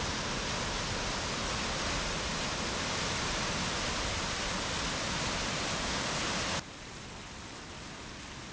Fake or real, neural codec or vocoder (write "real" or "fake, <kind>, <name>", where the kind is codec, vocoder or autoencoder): real